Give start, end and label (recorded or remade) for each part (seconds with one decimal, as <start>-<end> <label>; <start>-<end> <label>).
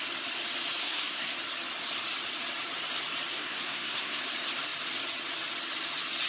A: 0.0-0.8 recorded; 0.8-1.3 remade; 1.3-3.3 recorded; 3.3-4.2 remade; 4.2-6.3 recorded